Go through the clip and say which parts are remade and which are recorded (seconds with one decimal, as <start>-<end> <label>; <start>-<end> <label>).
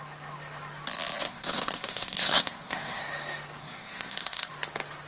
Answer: 0.0-1.2 recorded; 1.2-3.0 remade; 3.0-3.6 recorded; 3.6-4.5 remade; 4.5-5.1 recorded